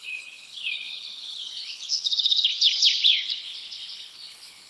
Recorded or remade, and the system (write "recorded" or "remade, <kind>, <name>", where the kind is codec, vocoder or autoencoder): remade, codec, HILCodec